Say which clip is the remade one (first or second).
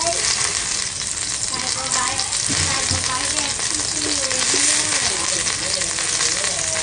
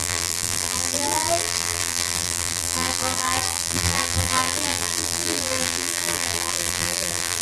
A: second